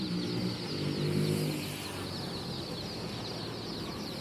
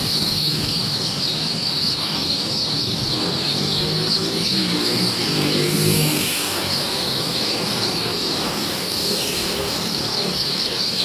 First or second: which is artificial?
second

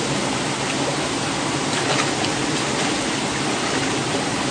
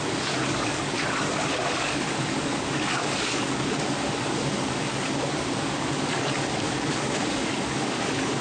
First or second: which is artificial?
second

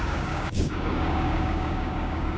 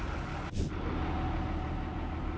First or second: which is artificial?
first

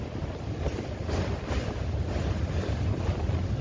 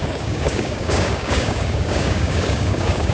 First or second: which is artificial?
second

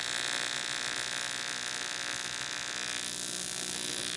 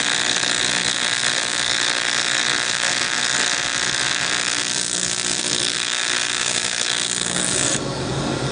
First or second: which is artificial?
second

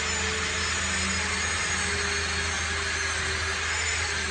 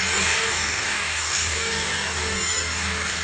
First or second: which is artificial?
second